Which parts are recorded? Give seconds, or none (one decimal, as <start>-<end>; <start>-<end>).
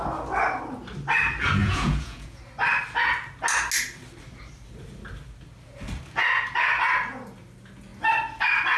0.0-1.6; 2.4-8.8